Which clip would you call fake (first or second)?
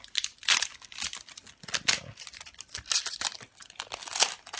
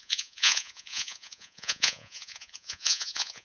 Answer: second